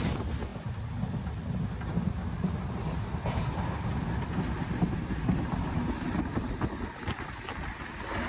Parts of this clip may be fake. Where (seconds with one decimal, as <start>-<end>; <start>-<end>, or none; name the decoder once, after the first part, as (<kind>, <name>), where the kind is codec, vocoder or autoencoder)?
none